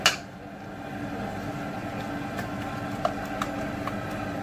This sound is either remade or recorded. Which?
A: recorded